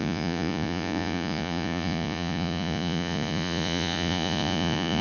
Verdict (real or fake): fake